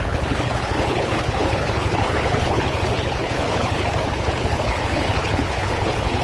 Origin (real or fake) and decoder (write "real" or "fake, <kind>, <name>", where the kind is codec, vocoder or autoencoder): fake, codec, HILCodec